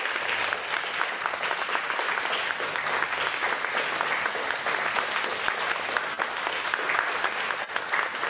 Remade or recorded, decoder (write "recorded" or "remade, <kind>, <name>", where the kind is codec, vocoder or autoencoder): recorded